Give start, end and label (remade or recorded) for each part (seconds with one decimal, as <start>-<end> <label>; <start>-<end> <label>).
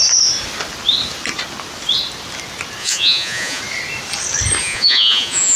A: 0.0-2.8 recorded; 2.8-3.6 remade; 3.6-4.6 recorded; 4.6-5.6 remade